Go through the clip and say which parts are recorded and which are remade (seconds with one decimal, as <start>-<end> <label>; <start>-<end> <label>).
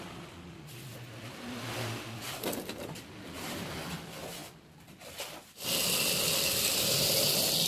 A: 0.0-7.7 recorded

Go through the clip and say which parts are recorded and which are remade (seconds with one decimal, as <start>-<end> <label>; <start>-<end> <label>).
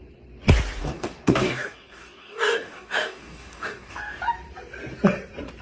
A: 0.0-0.8 recorded; 0.8-4.2 remade; 4.2-5.6 recorded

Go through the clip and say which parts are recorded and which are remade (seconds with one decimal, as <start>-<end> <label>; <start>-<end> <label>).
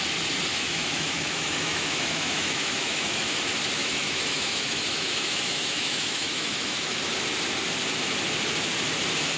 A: 0.0-0.5 recorded; 0.5-3.4 remade; 3.4-3.8 recorded; 3.8-7.0 remade; 7.0-9.4 recorded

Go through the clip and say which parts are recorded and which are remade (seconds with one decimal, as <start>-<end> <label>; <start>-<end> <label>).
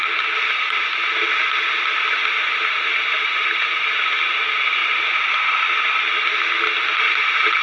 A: 0.0-7.6 recorded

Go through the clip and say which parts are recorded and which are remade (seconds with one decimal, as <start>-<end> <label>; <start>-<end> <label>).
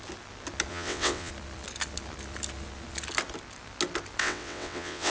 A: 0.0-0.7 recorded; 0.7-1.3 remade; 1.3-4.2 recorded; 4.2-5.1 remade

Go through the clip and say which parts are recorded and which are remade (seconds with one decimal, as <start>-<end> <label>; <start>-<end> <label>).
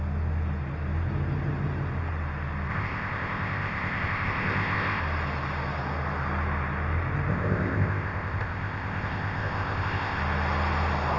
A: 0.0-2.7 recorded; 2.7-5.0 remade; 5.0-7.3 recorded; 7.3-10.2 remade; 10.2-11.2 recorded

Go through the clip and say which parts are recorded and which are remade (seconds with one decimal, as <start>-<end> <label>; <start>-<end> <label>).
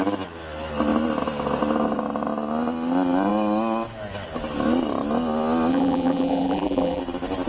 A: 0.0-5.7 recorded; 5.7-7.0 remade; 7.0-7.5 recorded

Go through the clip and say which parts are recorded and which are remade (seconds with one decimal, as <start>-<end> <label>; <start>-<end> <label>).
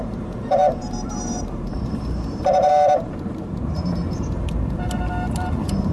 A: 0.0-5.9 remade